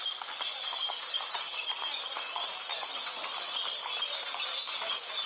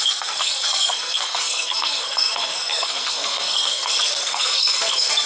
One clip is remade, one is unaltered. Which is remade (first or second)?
second